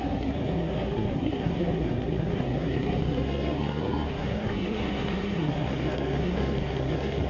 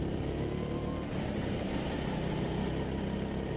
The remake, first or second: first